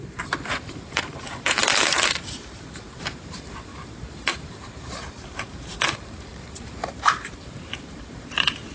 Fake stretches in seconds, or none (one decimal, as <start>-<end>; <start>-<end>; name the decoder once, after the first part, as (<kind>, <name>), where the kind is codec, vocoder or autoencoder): 0.0-8.7 (vocoder, BigVGAN v2)